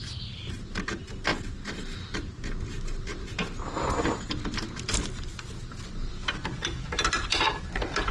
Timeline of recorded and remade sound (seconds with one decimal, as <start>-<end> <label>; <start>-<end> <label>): 0.0-8.1 recorded